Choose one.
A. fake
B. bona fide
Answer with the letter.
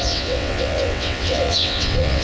A